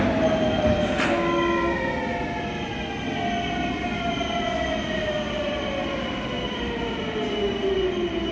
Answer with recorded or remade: recorded